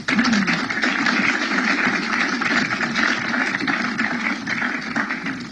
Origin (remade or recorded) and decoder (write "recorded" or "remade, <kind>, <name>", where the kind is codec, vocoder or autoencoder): recorded